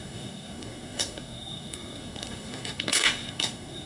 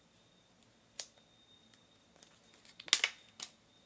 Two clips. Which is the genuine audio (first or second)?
second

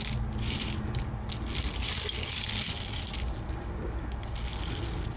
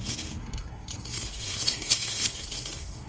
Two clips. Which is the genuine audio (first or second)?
first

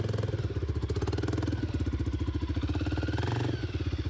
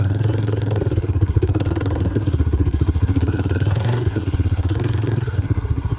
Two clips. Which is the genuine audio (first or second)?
first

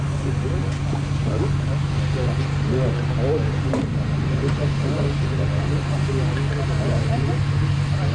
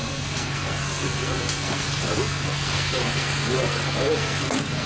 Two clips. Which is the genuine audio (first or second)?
first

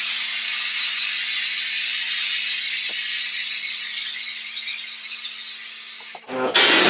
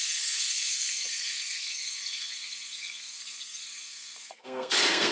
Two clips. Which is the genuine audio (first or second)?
first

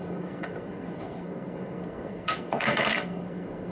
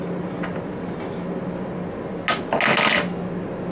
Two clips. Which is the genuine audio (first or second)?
second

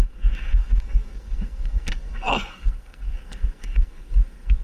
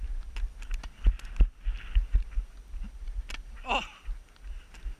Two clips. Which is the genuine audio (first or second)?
second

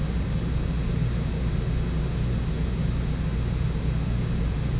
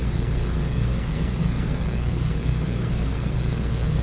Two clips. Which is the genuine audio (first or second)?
first